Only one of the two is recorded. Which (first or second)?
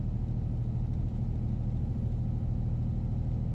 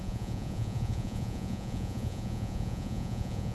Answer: first